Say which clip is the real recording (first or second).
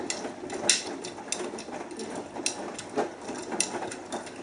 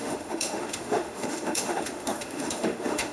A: first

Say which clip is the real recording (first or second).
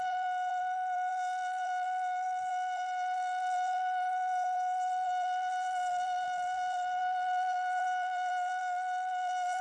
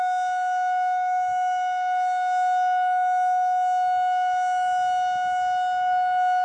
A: second